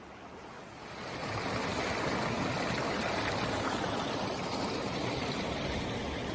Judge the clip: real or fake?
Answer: real